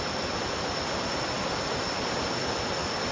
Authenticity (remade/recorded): recorded